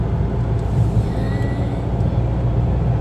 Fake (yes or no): no